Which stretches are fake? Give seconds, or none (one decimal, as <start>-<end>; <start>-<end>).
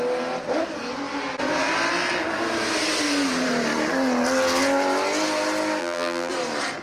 5.8-6.3